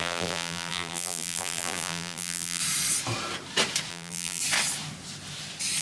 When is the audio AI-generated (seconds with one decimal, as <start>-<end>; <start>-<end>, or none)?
0.0-2.6; 3.9-4.4